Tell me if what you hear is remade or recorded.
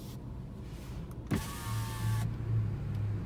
recorded